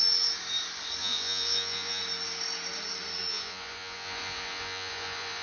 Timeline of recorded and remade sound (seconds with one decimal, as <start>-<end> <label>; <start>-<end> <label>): 0.0-1.0 recorded; 1.0-2.0 remade; 2.0-3.3 recorded; 3.3-5.4 remade